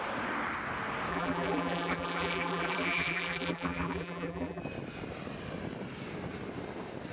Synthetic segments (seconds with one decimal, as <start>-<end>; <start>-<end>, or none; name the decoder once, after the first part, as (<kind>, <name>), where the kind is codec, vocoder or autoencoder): 1.1-4.6 (vocoder, BigVGAN v2)

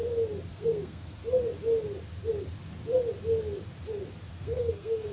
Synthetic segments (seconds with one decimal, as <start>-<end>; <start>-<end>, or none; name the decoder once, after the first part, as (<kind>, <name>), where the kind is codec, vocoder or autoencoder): 0.5-1.2 (codec, SNAC); 4.3-5.1